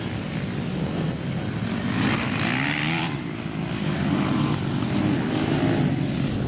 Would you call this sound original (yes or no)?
yes